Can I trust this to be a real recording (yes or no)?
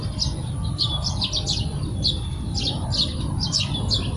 yes